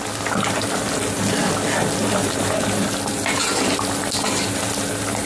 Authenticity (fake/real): real